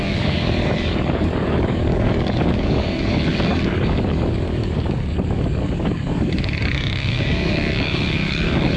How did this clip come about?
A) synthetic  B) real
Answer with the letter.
A